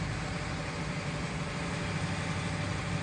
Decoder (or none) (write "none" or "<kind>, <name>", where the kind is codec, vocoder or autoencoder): none